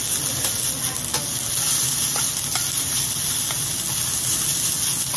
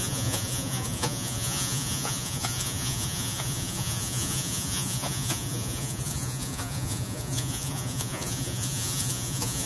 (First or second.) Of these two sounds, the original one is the first